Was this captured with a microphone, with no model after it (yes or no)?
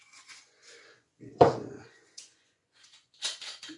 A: no